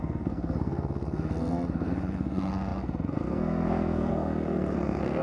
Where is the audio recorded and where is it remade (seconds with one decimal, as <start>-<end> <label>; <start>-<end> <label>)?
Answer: 0.0-5.2 remade